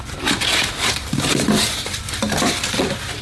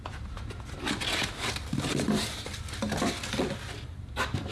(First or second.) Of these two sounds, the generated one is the first